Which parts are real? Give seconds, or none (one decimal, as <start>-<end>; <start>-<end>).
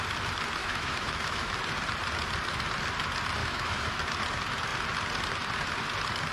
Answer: 0.0-0.6; 1.6-3.4; 4.0-6.3